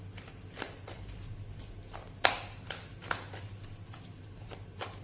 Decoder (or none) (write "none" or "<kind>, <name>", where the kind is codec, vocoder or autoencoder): none